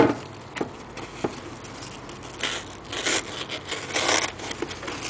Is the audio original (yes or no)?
yes